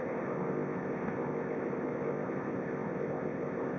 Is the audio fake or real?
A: fake